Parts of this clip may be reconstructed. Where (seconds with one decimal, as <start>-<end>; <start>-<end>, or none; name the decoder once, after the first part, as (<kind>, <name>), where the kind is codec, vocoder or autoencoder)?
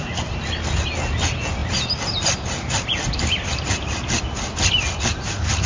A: 1.6-5.0 (vocoder, BigVGAN v2)